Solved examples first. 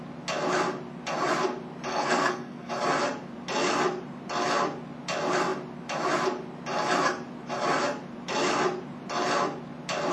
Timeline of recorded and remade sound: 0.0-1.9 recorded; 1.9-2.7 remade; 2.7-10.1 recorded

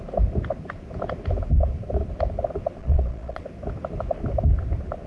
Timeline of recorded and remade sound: 0.0-2.8 recorded; 2.8-3.4 remade; 3.4-5.1 recorded

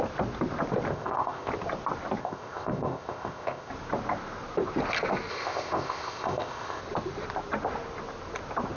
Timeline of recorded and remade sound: 0.0-0.9 recorded; 0.9-1.5 remade; 1.5-2.2 recorded; 2.2-3.7 remade; 3.7-5.3 recorded; 5.3-6.8 remade; 6.8-8.8 recorded

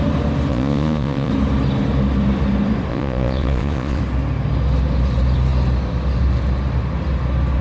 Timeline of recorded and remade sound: 0.0-0.5 recorded; 0.5-1.3 remade; 1.3-2.9 recorded; 2.9-4.0 remade; 4.0-7.6 recorded

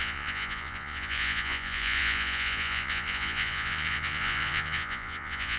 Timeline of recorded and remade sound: 0.0-5.6 remade

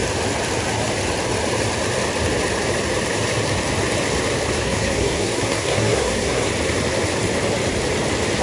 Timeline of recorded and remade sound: 0.0-4.6 recorded; 4.6-6.5 remade; 6.5-8.4 recorded

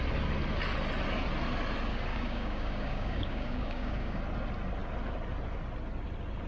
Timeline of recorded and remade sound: 0.0-2.1 recorded; 2.1-4.2 remade; 4.2-6.5 recorded